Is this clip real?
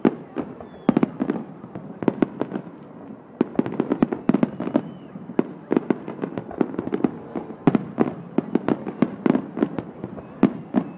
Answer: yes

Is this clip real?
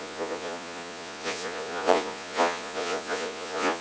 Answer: no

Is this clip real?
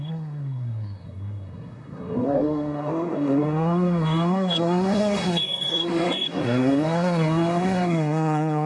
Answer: no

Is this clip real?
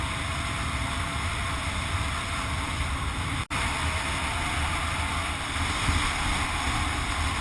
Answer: yes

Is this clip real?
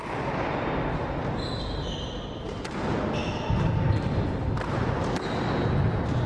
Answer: yes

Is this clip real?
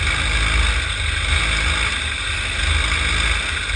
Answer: yes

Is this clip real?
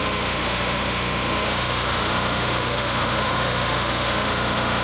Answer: no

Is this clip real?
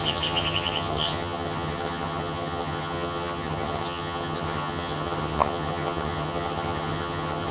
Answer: no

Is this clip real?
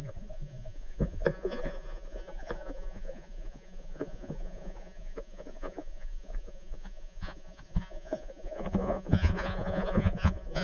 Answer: no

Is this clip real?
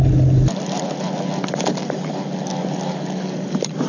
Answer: yes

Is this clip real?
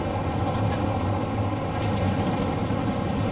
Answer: yes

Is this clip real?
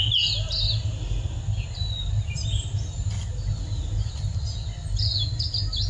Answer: yes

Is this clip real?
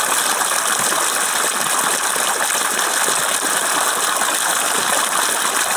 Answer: yes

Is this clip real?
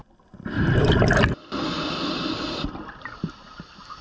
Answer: yes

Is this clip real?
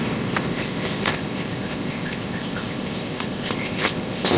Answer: no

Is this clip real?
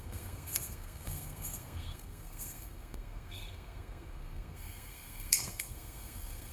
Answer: no